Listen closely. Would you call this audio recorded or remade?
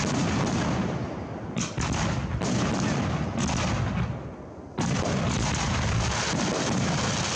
recorded